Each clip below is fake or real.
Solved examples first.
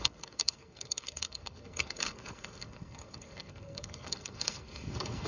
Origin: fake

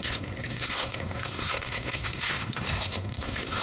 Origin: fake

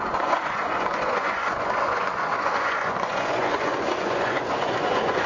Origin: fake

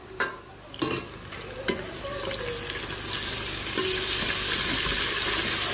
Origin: real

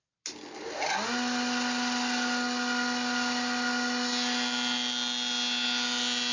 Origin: real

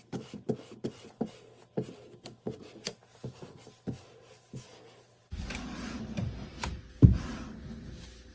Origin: real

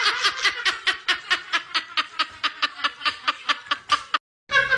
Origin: real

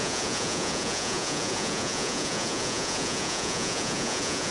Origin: fake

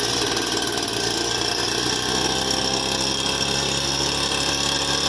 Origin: real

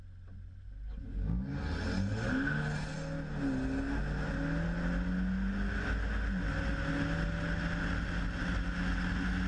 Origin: real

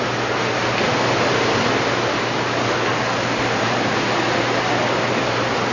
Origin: real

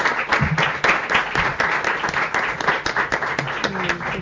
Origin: real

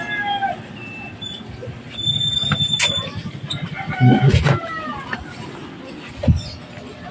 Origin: real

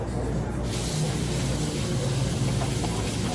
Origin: real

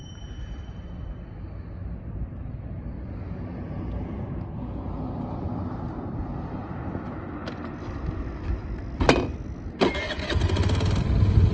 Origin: real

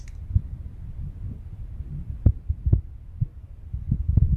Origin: real